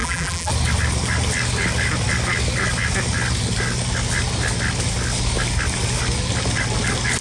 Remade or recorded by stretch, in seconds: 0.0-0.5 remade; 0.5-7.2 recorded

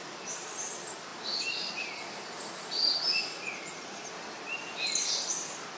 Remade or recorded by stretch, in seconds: 0.0-5.8 recorded

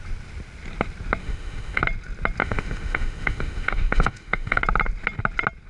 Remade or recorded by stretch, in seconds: 0.0-1.2 recorded; 1.2-1.8 remade; 1.8-2.4 recorded; 2.4-4.6 remade; 4.6-5.7 recorded

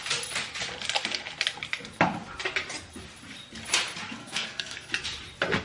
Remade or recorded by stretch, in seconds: 0.0-4.2 recorded; 4.2-4.9 remade; 4.9-5.6 recorded

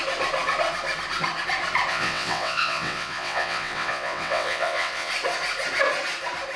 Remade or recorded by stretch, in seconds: 0.0-1.9 recorded; 1.9-5.1 remade; 5.1-6.6 recorded

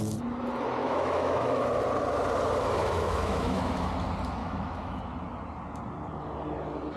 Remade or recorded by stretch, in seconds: 0.0-0.8 recorded; 0.8-1.6 remade; 1.6-2.8 recorded; 2.8-3.9 remade; 3.9-4.4 recorded; 4.4-5.0 remade; 5.0-7.0 recorded

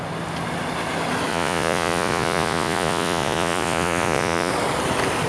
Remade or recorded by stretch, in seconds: 0.0-1.3 recorded; 1.3-4.5 remade; 4.5-5.3 recorded

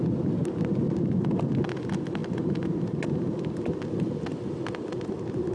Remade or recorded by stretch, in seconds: 0.0-5.5 recorded